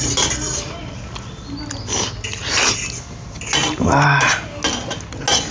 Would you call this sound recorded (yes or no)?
yes